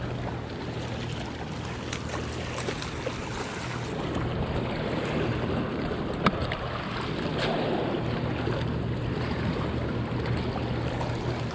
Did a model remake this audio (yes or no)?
no